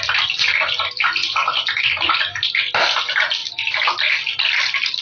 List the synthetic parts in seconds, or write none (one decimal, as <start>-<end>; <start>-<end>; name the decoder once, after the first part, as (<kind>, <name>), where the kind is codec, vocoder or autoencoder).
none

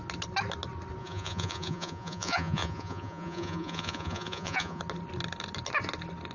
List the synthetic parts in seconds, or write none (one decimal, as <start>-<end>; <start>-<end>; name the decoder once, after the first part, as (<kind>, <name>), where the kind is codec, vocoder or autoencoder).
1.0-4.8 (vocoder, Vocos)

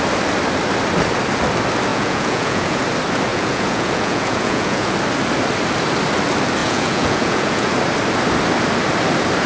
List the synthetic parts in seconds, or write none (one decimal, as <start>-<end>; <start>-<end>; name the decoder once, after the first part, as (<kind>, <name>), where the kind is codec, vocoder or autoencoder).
1.9-2.8 (vocoder, Vocos); 3.3-4.9; 6.6-7.7

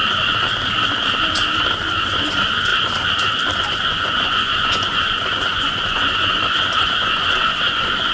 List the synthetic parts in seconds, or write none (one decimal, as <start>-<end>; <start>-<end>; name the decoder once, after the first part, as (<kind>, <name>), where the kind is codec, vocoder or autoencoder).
2.0-2.7 (vocoder, Vocos); 3.7-8.1